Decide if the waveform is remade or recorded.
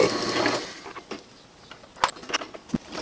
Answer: recorded